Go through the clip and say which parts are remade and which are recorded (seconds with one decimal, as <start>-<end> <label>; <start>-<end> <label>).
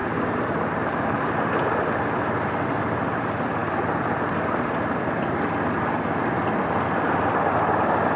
0.0-8.2 recorded